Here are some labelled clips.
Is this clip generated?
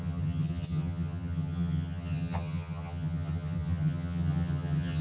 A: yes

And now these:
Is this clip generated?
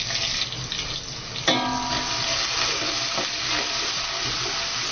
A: no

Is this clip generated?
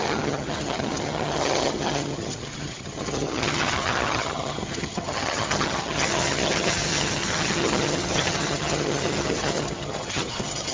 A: yes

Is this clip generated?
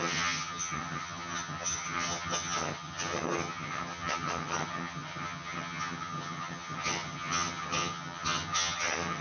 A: yes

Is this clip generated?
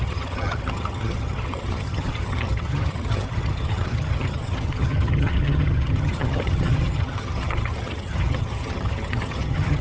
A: yes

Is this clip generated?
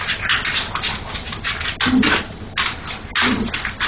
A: no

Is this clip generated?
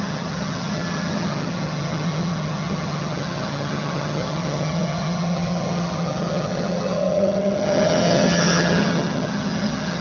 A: yes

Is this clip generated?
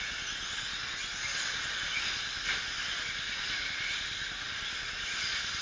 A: no